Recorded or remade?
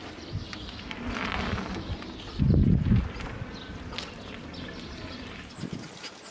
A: recorded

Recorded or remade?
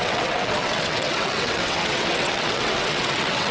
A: remade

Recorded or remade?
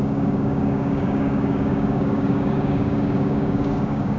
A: remade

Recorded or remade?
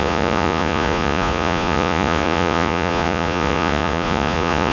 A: remade